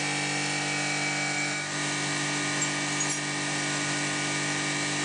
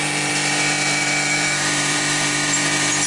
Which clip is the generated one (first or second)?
second